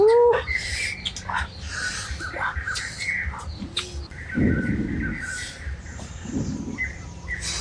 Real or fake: real